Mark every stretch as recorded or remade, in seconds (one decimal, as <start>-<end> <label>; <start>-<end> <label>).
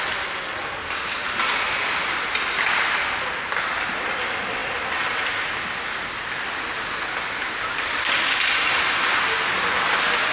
0.0-10.3 recorded